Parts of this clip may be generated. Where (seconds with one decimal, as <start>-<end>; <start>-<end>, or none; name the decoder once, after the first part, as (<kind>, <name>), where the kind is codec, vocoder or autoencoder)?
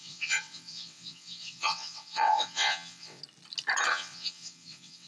0.0-3.2 (vocoder, WaveNeXt); 3.9-5.1